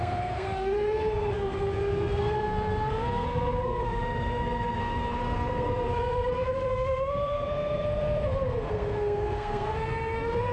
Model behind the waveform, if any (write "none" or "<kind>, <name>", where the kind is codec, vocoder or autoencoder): codec, SNAC